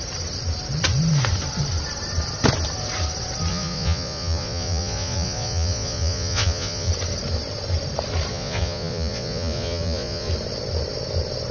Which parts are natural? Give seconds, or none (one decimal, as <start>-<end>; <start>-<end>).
0.0-3.5; 6.9-8.3; 10.3-11.5